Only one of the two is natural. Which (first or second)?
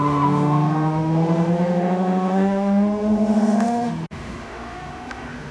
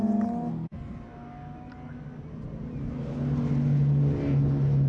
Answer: second